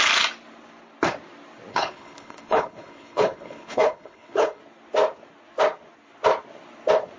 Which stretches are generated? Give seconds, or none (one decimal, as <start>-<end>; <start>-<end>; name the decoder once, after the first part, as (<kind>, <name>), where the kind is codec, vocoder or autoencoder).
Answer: 1.7-4.6 (codec, HILCodec)

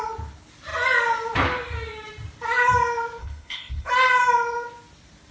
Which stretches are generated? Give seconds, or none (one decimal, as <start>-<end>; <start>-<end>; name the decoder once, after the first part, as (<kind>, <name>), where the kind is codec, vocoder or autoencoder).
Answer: 3.2-3.9 (codec, HILCodec)